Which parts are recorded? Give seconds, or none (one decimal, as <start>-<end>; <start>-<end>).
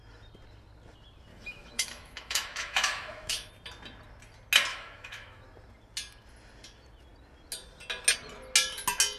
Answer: 0.0-1.3; 3.5-4.7; 5.4-9.2